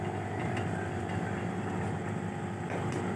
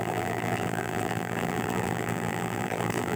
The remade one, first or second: second